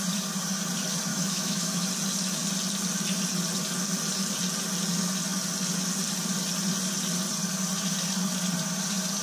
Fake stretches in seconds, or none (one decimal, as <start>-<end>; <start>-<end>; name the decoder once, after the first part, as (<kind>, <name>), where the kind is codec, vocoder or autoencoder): 1.1-1.9 (autoencoder, DAC-VAE)